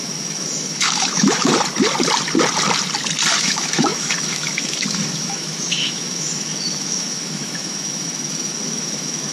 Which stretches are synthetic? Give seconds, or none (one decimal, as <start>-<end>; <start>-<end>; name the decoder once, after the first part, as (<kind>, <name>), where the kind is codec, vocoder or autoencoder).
0.0-1.5 (autoencoder, DAC-VAE); 3.4-9.3